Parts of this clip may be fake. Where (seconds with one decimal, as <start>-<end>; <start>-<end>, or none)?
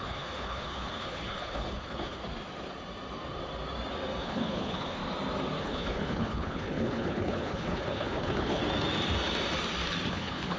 0.0-2.2; 4.2-5.0; 5.6-8.6; 10.1-10.6